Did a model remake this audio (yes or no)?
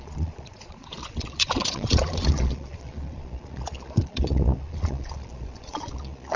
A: yes